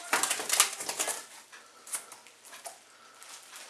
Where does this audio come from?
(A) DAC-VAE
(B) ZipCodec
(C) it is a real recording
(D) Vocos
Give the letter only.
C